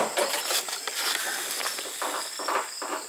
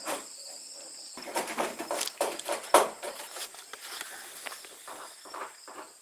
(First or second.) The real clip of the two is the first